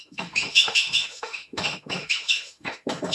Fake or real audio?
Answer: fake